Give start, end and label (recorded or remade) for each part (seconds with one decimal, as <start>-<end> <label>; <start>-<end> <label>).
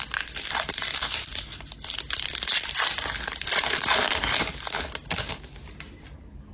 0.0-6.5 recorded